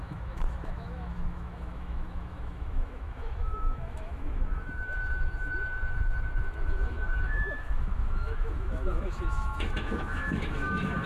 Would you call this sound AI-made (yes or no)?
yes